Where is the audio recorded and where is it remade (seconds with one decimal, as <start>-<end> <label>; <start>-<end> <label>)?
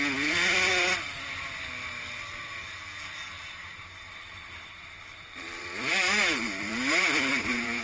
0.0-3.6 recorded; 3.6-7.8 remade